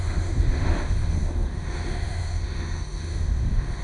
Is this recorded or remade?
remade